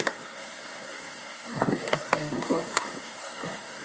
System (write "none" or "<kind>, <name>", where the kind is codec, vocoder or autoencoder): codec, SNAC